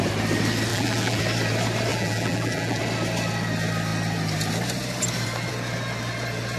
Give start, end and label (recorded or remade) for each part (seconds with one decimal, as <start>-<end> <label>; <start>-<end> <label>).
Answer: 0.0-0.7 recorded; 0.7-1.2 remade; 1.2-1.9 recorded; 1.9-2.8 remade; 2.8-6.6 recorded